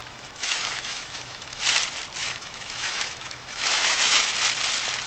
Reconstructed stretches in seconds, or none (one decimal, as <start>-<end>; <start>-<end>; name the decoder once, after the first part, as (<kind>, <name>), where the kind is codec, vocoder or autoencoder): 0.0-1.6 (autoencoder, DAC-VAE); 2.2-4.3